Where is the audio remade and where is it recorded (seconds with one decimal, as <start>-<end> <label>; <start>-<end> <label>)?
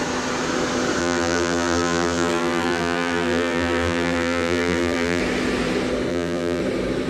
0.0-1.0 recorded; 1.0-5.2 remade; 5.2-6.1 recorded; 6.1-6.6 remade; 6.6-7.1 recorded